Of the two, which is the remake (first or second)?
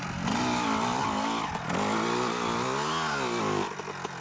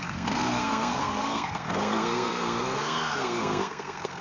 second